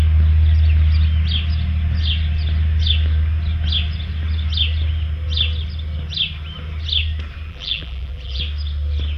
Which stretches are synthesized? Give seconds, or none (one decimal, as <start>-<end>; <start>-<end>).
7.5-8.4